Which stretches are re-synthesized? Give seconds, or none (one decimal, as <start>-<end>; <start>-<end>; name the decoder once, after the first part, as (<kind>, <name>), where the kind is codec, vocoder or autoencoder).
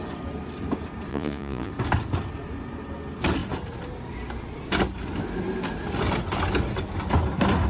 1.1-1.7 (vocoder, Vocos)